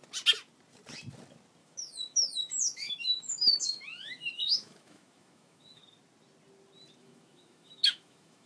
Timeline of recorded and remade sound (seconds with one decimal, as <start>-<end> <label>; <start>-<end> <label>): 0.0-1.6 recorded; 1.6-5.8 remade; 5.8-7.0 recorded; 7.0-8.5 remade